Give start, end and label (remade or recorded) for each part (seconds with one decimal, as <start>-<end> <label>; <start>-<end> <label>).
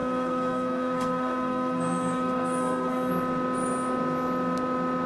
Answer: 0.0-3.1 remade; 3.1-5.1 recorded